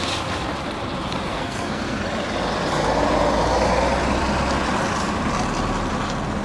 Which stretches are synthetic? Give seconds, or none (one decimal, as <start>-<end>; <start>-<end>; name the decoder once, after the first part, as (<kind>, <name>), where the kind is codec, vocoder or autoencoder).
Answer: 1.3-2.0 (codec, SNAC)